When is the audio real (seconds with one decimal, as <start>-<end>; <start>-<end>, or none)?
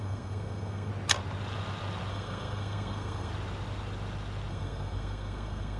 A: 0.9-2.1; 3.3-4.5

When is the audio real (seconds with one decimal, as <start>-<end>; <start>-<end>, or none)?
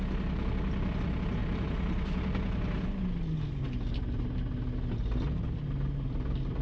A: 0.0-6.6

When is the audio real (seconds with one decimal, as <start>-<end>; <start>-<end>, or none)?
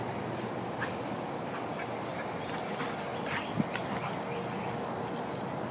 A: 0.0-5.7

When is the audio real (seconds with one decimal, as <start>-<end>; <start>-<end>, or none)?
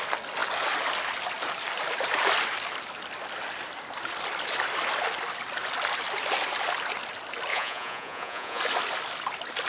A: 0.0-7.5; 8.6-9.7